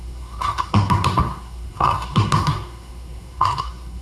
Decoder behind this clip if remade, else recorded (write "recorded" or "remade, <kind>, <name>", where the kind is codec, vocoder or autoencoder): remade, codec, SNAC